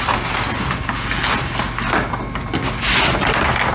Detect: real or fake real